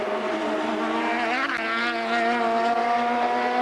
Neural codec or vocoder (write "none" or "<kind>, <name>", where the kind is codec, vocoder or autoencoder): none